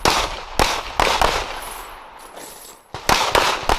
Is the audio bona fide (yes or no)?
yes